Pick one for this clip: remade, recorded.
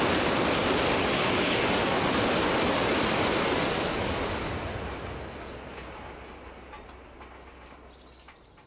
recorded